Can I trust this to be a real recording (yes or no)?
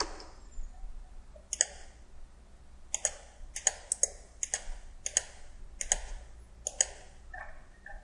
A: yes